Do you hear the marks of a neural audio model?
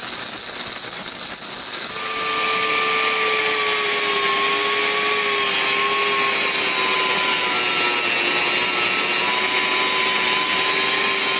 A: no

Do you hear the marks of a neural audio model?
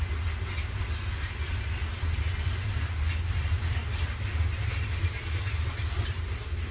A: no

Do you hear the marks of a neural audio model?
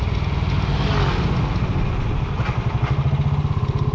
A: no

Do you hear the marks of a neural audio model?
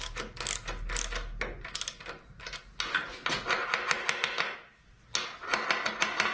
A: no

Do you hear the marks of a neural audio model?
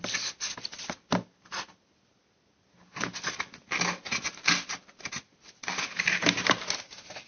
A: no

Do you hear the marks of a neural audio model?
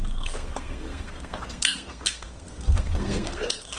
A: yes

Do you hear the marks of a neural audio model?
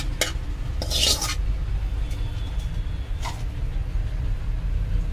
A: no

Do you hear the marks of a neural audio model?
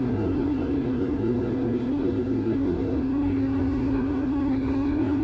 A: yes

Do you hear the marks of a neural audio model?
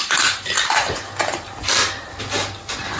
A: no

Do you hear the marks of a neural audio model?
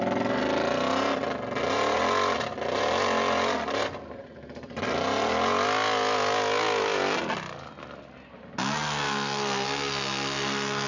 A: no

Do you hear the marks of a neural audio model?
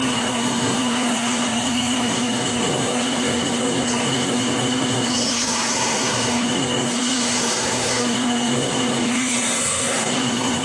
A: yes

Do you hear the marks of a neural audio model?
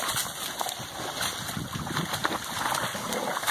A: no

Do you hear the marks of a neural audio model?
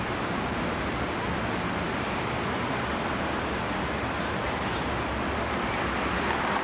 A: no